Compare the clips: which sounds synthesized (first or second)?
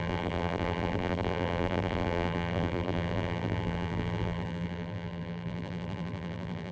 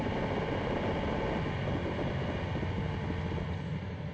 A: first